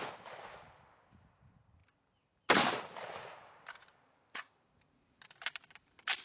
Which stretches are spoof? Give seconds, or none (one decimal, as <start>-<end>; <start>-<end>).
none